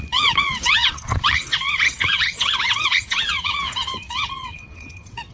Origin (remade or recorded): remade